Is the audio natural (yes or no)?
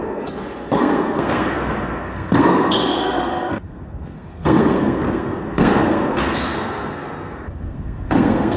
no